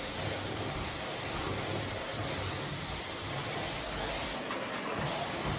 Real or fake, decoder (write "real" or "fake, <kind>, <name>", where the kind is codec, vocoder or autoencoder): real